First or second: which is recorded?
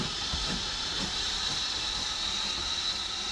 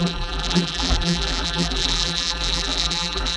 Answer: first